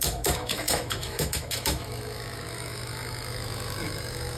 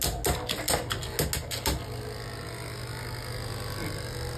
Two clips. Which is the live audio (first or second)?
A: second